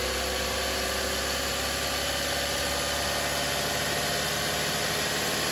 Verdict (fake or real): real